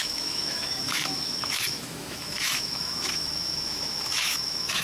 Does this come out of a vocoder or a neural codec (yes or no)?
yes